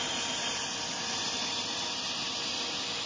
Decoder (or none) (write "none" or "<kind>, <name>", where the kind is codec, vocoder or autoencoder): none